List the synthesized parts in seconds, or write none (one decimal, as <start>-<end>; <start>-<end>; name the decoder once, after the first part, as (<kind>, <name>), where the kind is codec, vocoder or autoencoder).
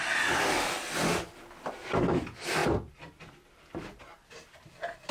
none